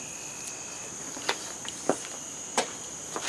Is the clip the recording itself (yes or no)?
yes